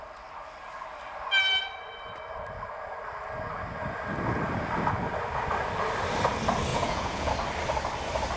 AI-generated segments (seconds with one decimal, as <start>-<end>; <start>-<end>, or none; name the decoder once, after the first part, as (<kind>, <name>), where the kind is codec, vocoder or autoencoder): 6.7-7.3 (vocoder, Vocos)